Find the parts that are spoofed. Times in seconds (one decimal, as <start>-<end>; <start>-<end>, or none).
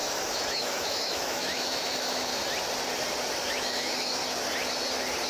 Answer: 0.0-2.3; 3.3-4.2